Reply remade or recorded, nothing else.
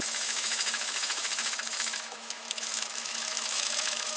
remade